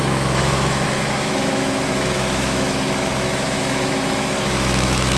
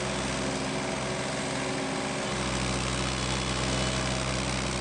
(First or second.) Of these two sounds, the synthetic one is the first